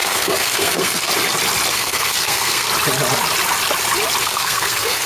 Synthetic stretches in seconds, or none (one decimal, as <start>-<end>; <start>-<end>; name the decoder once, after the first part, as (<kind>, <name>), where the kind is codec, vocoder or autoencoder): 0.0-1.1 (codec, SNAC); 1.7-2.7; 4.2-5.1